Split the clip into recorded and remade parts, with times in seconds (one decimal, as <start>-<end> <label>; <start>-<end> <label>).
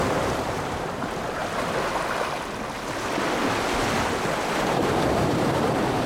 0.0-1.4 remade; 1.4-5.1 recorded; 5.1-6.1 remade